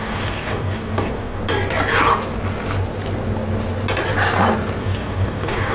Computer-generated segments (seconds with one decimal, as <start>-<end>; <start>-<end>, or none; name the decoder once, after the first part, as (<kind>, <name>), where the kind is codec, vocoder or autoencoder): 0.0-1.4 (codec, DAC); 4.8-5.7